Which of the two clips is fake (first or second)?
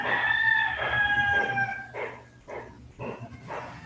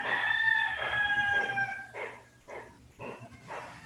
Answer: second